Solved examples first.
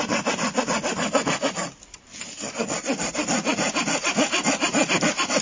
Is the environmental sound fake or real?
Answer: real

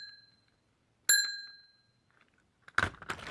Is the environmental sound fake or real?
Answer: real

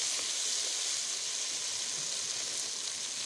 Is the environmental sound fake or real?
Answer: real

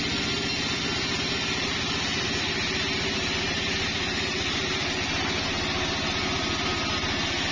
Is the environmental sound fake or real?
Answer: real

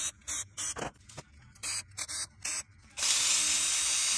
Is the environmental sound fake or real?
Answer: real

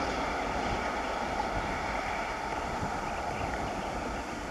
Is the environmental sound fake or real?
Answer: real